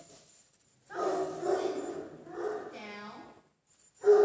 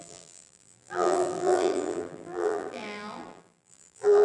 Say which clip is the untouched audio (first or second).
first